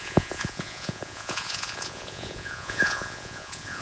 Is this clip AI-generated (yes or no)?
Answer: yes